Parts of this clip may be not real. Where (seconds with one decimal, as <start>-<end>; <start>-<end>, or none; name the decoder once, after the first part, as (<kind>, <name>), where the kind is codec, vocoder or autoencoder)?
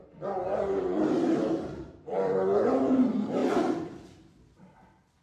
0.4-1.8 (vocoder, BigVGAN v2); 3.4-4.1